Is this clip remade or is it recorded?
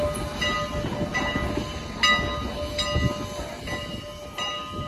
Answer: recorded